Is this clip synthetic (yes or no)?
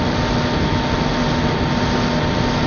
no